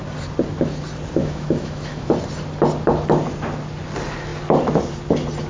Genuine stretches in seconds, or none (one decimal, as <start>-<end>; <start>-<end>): 0.0-1.2; 2.1-5.5